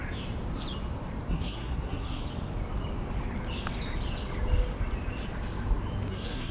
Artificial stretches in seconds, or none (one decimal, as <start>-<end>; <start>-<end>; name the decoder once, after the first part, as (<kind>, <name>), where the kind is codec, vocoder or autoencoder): 1.3-2.2 (codec, SNAC); 6.1-6.5